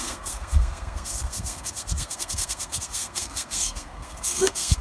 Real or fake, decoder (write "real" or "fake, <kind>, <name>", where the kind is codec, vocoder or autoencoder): fake, codec, SNAC